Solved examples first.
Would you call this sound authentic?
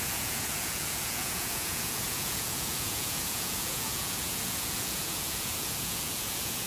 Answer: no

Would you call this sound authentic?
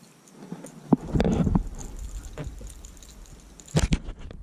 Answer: yes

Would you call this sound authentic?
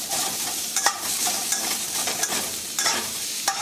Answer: no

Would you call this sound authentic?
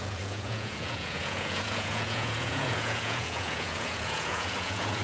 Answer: no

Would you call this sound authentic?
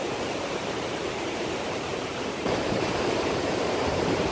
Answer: no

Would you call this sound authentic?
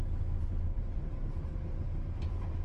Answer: no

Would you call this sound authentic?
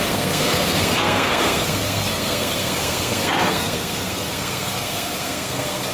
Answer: no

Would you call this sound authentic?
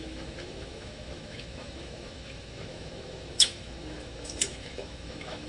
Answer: no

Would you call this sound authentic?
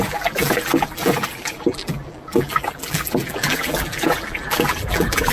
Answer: no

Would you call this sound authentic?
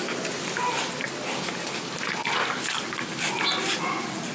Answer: yes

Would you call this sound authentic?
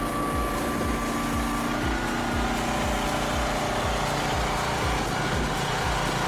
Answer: yes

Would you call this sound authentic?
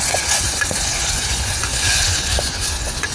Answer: no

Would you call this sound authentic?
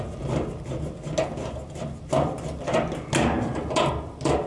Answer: yes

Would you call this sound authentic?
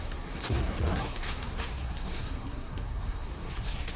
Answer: no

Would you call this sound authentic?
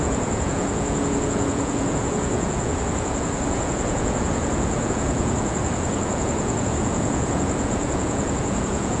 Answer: no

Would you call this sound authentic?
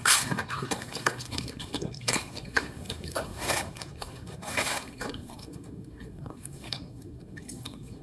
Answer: no